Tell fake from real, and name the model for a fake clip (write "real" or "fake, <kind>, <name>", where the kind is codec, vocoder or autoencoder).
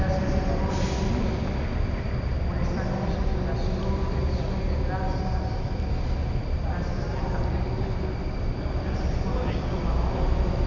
real